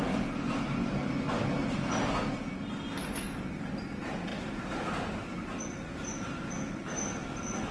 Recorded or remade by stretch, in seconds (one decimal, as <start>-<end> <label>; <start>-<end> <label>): 0.0-7.7 recorded